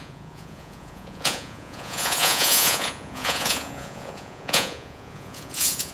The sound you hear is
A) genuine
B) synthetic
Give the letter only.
B